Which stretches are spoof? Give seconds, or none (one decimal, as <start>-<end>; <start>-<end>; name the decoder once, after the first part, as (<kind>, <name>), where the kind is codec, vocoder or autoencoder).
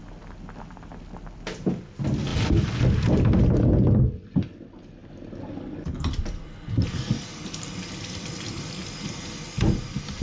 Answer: none